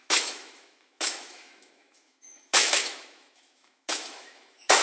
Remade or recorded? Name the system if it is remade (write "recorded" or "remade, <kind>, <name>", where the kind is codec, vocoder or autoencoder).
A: remade, autoencoder, DAC-VAE